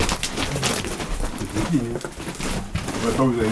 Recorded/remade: recorded